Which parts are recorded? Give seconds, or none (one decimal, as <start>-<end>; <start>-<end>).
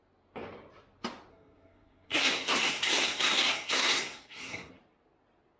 0.0-1.3; 4.7-5.6